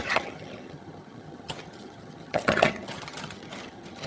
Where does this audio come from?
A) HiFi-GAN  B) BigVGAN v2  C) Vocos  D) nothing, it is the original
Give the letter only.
A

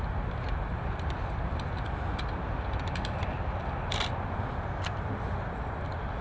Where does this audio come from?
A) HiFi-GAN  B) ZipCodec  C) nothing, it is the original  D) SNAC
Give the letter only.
C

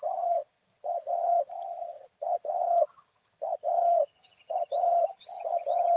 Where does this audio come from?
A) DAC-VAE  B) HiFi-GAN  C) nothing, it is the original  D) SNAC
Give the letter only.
B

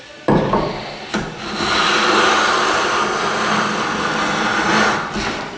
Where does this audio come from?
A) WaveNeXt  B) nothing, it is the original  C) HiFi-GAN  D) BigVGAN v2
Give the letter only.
B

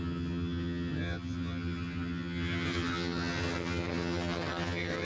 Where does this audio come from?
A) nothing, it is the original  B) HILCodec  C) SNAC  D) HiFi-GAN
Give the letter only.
D